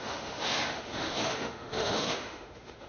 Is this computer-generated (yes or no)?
yes